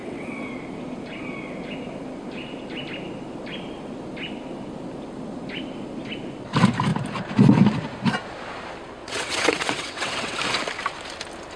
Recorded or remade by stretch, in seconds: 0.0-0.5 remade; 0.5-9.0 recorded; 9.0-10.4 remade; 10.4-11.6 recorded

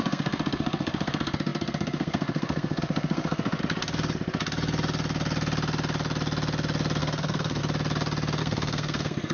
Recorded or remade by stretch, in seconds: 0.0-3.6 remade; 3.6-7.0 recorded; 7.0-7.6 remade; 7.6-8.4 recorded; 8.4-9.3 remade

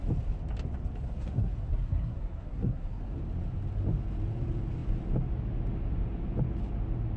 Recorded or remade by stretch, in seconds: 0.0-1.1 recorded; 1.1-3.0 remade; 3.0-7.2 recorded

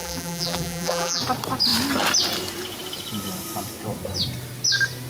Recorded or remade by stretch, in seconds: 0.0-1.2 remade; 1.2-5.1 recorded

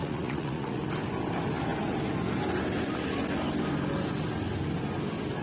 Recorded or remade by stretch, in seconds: 0.0-0.8 remade; 0.8-5.4 recorded

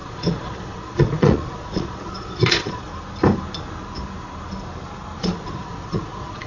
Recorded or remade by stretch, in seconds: 0.0-2.9 remade; 2.9-5.2 recorded; 5.2-6.5 remade

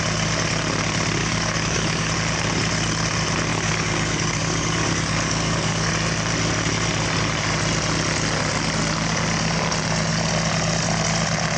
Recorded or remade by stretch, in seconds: 0.0-1.2 recorded; 1.2-2.1 remade; 2.1-3.5 recorded; 3.5-5.9 remade; 5.9-11.6 recorded

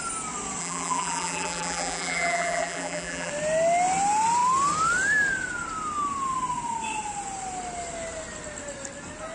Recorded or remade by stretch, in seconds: 0.0-0.6 recorded; 0.6-3.3 remade; 3.3-9.3 recorded